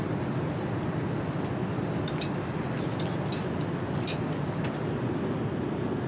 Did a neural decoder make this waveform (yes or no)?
no